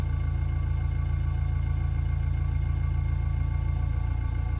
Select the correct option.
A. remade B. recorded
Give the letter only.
B